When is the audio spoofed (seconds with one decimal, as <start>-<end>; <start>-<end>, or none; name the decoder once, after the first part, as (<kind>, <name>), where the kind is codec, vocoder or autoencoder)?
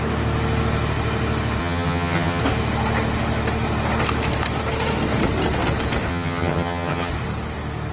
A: 1.6-2.4 (vocoder, HiFi-GAN); 6.1-7.1